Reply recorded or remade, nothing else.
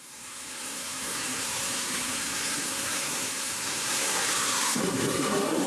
remade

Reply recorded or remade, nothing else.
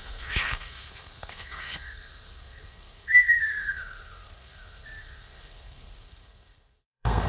remade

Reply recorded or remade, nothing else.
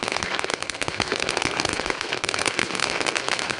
remade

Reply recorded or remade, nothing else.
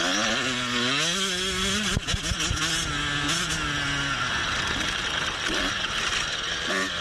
recorded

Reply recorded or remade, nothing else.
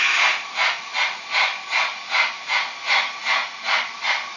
recorded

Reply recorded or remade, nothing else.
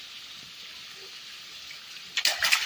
recorded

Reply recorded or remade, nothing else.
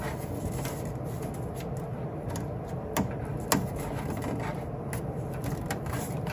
recorded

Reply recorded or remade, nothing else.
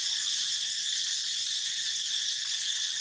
recorded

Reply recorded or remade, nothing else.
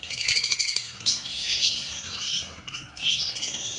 remade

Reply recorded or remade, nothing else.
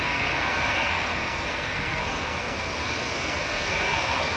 remade